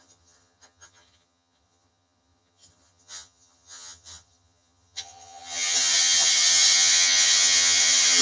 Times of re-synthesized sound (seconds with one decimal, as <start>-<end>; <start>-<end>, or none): 0.0-8.2